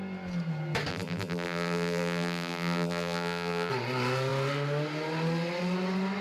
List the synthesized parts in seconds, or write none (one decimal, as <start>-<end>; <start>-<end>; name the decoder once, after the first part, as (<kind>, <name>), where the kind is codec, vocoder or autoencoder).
0.9-3.7 (vocoder, BigVGAN v2)